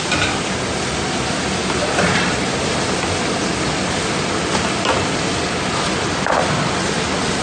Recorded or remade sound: recorded